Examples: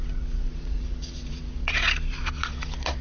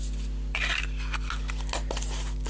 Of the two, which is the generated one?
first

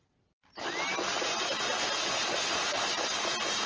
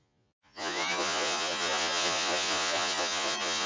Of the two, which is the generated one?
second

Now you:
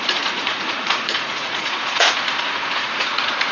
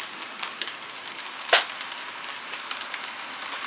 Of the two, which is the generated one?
first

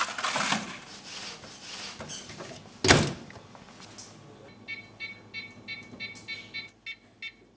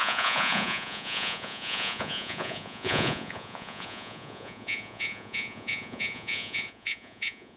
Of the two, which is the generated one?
second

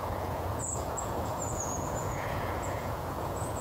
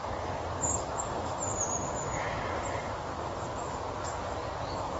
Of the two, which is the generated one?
first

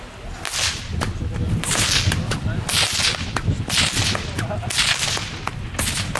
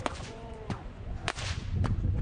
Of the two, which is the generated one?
second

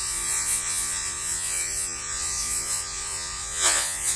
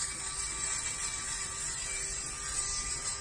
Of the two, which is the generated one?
first